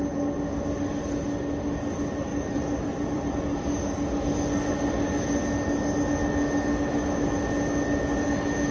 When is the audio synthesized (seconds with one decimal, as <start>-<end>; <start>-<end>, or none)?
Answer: 2.3-3.4